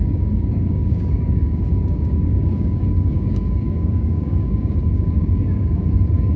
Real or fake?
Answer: fake